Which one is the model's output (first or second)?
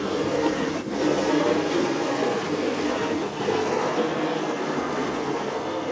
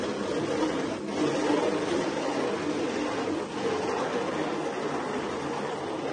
first